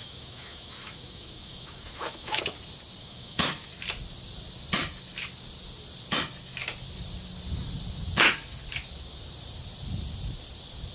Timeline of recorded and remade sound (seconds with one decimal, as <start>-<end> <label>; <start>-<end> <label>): 0.0-2.4 remade; 2.4-3.0 recorded; 3.0-3.7 remade; 3.7-10.9 recorded